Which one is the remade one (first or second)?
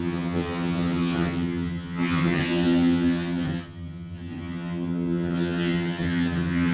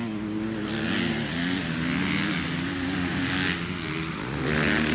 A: first